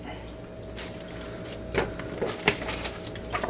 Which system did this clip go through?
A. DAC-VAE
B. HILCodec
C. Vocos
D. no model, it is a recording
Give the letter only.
D